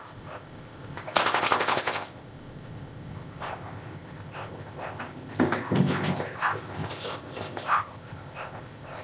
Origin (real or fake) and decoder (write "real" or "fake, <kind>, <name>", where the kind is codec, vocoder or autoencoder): fake, codec, ZipCodec